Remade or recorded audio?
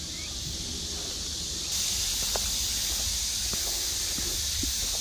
recorded